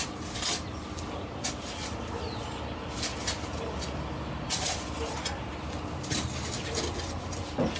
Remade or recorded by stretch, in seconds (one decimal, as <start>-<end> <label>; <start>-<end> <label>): 0.0-7.8 recorded